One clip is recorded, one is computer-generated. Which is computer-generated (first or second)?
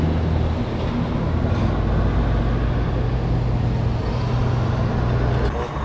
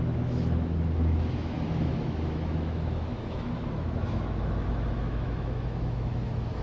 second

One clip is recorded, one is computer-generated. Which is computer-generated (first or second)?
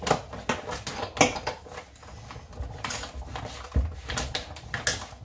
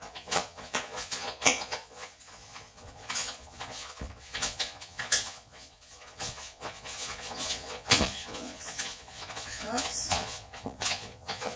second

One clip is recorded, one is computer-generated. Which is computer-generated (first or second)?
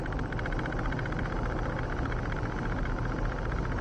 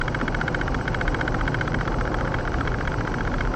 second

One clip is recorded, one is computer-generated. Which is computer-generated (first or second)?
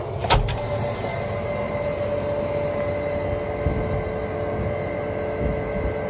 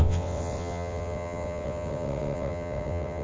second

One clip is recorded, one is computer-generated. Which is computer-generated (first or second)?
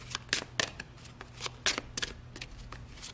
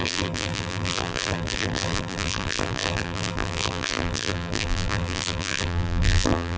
second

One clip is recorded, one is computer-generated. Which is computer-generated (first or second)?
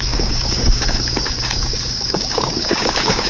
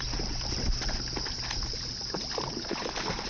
first